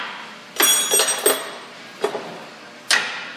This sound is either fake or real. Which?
real